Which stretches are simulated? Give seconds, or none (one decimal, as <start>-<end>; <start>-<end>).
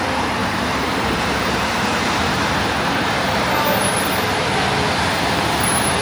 0.4-4.0; 5.1-6.0